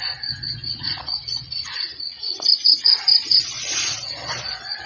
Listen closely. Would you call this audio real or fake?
fake